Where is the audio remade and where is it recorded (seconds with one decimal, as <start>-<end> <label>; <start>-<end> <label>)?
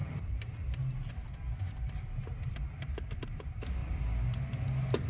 0.0-5.1 recorded